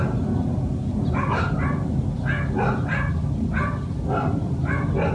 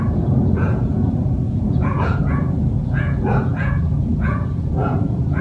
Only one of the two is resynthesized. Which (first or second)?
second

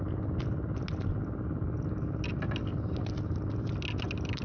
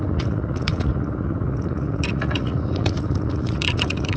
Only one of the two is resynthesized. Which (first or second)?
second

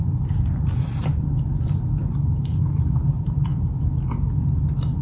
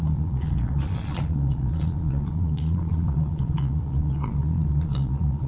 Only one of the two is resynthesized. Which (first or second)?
second